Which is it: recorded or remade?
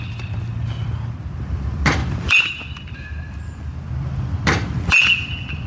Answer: recorded